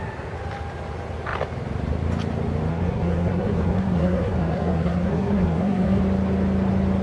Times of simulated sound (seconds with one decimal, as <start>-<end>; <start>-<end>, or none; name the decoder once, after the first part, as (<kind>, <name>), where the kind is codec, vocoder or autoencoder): 2.7-6.0 (codec, SNAC)

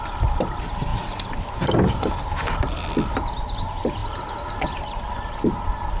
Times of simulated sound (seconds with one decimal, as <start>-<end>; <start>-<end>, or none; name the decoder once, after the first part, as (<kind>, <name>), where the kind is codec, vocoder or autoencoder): none

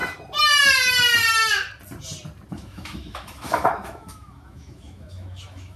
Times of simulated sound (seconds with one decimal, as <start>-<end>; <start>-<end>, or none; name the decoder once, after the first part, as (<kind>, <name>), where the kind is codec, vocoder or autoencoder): 2.5-5.8 (autoencoder, DAC-VAE)

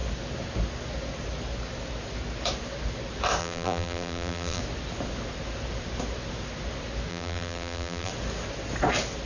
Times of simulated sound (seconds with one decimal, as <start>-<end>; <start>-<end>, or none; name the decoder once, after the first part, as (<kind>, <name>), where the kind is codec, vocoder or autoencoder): 3.4-4.6 (vocoder, BigVGAN v2); 7.1-8.1

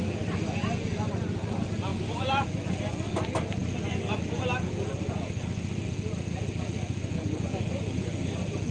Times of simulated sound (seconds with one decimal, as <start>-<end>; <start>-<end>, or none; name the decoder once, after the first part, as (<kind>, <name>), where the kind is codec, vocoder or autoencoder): 1.9-2.6 (autoencoder, DAC-VAE)

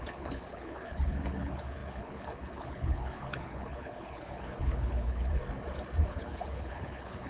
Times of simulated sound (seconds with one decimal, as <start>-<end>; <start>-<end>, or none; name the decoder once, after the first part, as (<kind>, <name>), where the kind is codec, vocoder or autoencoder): 0.0-5.4 (codec, HILCodec); 6.0-7.3

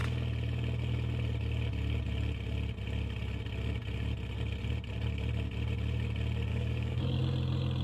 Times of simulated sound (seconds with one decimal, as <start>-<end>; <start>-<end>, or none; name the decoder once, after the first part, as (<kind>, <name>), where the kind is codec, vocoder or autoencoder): 6.5-7.2 (codec, DAC)

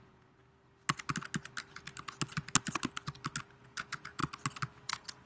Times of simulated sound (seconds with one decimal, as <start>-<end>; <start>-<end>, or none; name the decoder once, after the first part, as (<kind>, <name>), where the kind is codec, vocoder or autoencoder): 0.0-0.4 (vocoder, Vocos); 3.6-4.2; 4.8-5.3